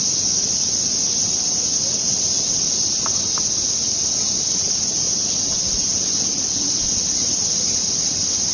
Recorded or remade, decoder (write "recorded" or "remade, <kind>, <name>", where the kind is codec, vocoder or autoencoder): recorded